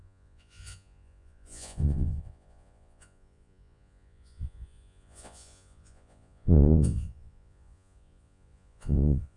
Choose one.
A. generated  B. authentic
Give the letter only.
A